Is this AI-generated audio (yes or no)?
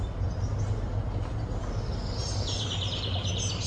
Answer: no